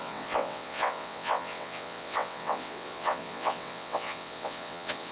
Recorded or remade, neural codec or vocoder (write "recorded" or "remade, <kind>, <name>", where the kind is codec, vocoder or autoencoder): remade, vocoder, WaveNeXt